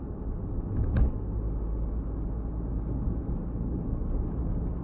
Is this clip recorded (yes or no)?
yes